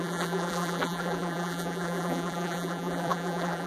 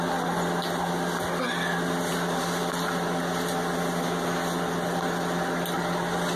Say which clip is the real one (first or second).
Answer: second